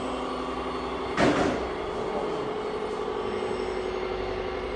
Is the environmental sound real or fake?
real